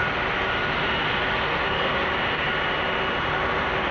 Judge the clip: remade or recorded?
recorded